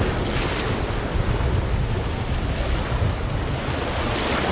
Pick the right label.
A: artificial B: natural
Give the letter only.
B